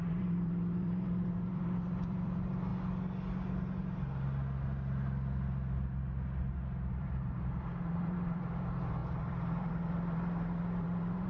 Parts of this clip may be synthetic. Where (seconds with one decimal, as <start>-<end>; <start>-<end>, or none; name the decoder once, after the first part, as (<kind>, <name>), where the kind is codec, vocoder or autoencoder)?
0.0-2.7 (vocoder, BigVGAN v2); 6.9-11.3

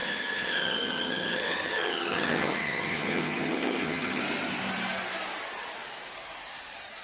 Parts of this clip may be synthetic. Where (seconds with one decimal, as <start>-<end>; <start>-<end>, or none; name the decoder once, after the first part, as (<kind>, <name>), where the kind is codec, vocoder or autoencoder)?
0.0-4.2 (vocoder, HiFi-GAN)

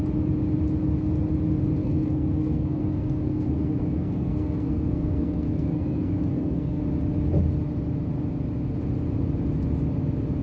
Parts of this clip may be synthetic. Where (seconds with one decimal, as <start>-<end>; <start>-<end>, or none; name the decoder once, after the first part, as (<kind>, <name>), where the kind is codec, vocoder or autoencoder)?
1.8-6.8 (codec, SNAC)

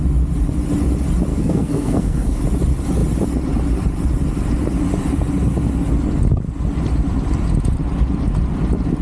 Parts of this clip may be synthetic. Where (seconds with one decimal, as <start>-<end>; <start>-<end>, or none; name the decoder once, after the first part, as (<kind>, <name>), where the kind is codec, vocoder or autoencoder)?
1.3-2.4 (codec, SNAC)

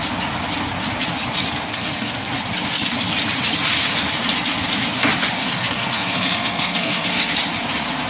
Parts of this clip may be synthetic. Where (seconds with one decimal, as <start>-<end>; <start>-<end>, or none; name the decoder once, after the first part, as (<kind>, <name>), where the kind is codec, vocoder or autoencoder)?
1.7-2.3 (codec, SNAC); 5.4-7.3

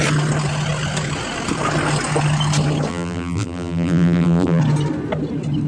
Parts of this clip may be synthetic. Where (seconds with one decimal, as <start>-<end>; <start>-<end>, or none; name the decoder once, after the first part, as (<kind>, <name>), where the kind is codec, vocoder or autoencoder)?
2.9-4.6 (vocoder, BigVGAN v2)

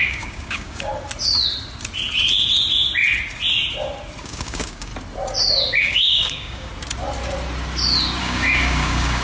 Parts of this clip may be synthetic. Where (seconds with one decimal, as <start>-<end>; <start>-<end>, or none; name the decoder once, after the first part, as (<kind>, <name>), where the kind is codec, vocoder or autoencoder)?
0.0-0.9 (codec, DAC); 4.2-4.9; 5.8-6.7; 8.2-9.2